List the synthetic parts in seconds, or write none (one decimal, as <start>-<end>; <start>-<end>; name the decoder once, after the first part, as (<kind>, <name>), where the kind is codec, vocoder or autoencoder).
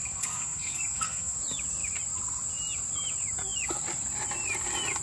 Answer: 0.0-1.4 (codec, SNAC)